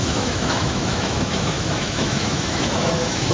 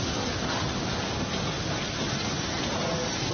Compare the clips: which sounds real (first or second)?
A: second